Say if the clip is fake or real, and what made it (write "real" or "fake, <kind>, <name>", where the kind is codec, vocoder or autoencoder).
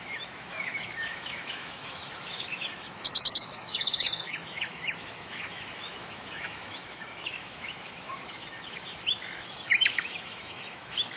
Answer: fake, autoencoder, DAC-VAE